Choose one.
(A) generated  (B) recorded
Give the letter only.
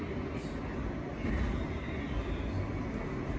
B